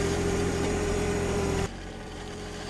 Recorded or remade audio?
remade